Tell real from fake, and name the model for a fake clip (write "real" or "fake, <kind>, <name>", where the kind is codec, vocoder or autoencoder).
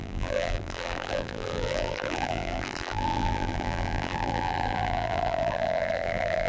fake, vocoder, BigVGAN v2